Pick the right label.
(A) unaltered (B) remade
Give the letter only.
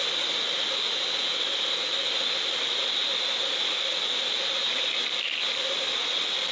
A